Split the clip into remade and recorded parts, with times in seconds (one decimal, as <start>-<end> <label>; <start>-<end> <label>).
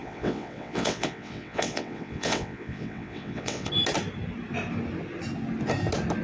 0.0-3.7 remade; 3.7-6.2 recorded